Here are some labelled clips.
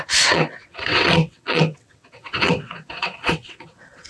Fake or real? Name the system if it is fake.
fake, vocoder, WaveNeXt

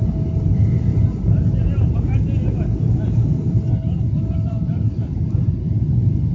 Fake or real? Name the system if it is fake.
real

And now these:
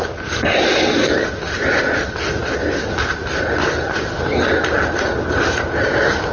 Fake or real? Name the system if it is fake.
real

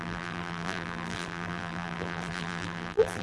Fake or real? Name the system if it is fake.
fake, vocoder, BigVGAN v2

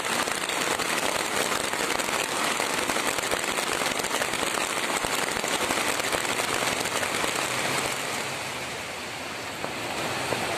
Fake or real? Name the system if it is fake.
real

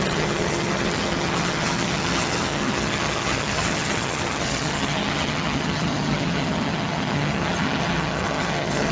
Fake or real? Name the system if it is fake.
fake, vocoder, HiFi-GAN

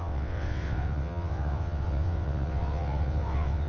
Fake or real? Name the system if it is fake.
fake, vocoder, WaveNeXt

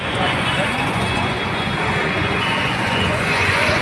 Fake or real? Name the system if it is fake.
fake, vocoder, Vocos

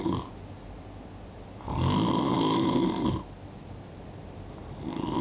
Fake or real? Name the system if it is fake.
real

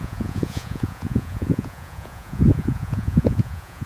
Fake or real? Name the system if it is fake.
fake, vocoder, Vocos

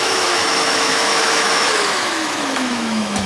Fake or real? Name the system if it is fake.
fake, autoencoder, DAC-VAE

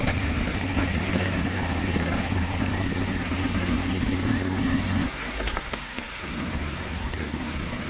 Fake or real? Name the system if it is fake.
fake, codec, SNAC